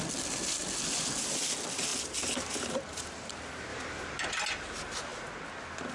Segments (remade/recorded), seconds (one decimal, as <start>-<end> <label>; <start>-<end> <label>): 0.0-1.9 recorded; 1.9-3.3 remade; 3.3-3.7 recorded; 3.7-4.4 remade; 4.4-5.9 recorded